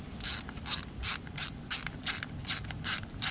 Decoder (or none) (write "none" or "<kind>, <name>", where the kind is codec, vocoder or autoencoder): none